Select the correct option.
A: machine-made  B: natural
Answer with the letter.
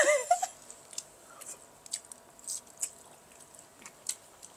B